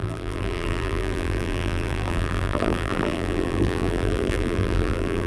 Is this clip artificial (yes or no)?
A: yes